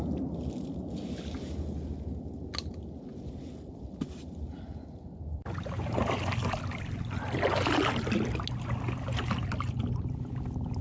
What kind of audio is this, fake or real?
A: real